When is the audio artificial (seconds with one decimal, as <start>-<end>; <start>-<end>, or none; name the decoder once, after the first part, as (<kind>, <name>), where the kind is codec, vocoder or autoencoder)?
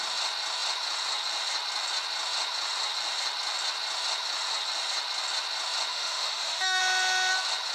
5.9-6.8 (autoencoder, DAC-VAE)